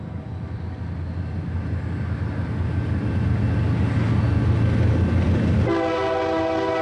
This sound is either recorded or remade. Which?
recorded